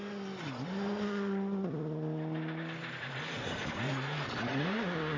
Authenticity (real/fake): real